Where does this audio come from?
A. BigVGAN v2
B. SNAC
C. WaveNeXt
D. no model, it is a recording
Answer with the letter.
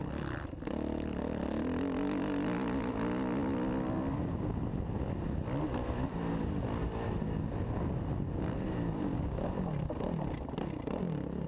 D